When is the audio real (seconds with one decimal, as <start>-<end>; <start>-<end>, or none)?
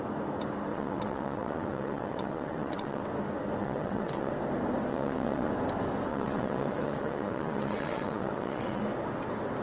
0.0-0.7; 3.0-3.6; 4.3-4.9; 5.5-6.1; 8.8-9.6